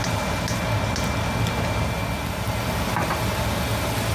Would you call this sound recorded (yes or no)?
yes